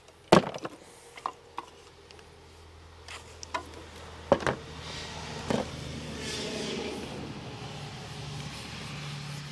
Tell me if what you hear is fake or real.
real